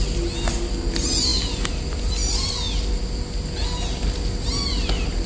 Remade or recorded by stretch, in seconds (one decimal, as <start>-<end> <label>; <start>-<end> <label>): 0.0-5.3 recorded